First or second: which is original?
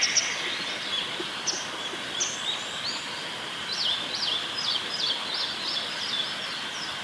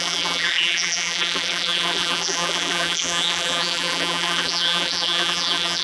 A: first